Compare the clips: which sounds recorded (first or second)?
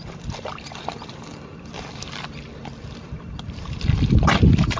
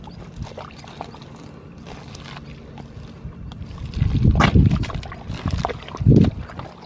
second